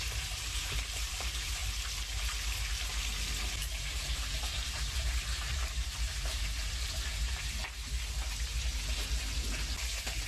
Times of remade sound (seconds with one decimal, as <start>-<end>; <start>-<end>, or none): 0.0-1.6; 3.8-7.1; 9.8-10.3